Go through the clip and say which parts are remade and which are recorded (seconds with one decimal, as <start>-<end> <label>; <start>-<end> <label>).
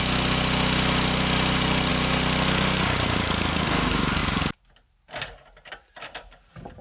0.0-6.8 recorded